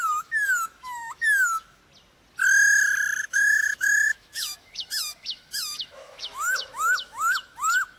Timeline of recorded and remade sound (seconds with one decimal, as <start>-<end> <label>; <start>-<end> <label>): 0.0-1.8 remade; 1.8-3.2 recorded; 3.2-8.0 remade